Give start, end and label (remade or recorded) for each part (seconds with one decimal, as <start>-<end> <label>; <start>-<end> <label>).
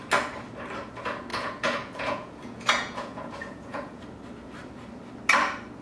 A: 0.0-1.3 recorded; 1.3-4.0 remade; 4.0-5.8 recorded